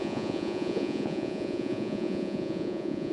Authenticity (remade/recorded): remade